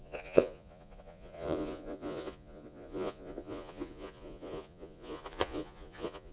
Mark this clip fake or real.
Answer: fake